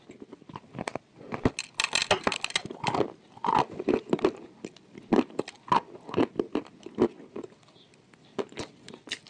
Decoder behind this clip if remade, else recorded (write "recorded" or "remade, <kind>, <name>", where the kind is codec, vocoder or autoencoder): recorded